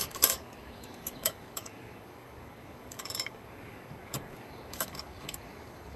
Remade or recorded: remade